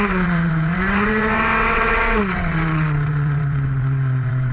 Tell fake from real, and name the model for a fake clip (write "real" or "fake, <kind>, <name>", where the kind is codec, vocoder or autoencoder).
fake, vocoder, WaveNeXt